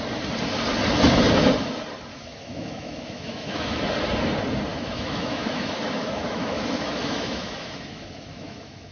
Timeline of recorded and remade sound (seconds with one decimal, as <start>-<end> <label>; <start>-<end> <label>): 0.0-2.1 recorded; 2.1-3.8 remade; 3.8-4.7 recorded; 4.7-8.9 remade